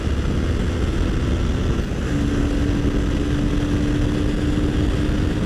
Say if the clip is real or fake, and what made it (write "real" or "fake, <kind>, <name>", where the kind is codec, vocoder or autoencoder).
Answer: real